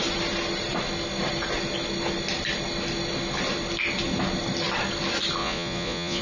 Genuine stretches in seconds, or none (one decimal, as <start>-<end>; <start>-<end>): 0.0-5.4